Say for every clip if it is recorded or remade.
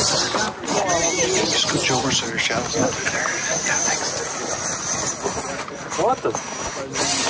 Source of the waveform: recorded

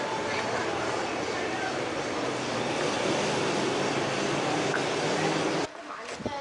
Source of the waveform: recorded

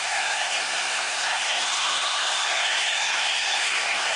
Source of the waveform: remade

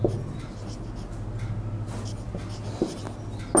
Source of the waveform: recorded